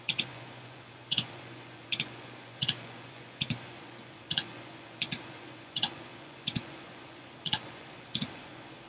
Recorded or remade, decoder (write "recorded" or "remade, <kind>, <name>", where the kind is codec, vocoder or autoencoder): remade, vocoder, Vocos